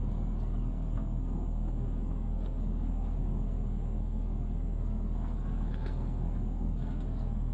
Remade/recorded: remade